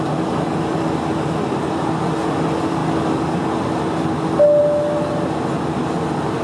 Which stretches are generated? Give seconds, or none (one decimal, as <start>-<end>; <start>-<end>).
none